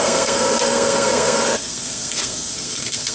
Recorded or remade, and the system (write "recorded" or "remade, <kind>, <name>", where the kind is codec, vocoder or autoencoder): remade, codec, SNAC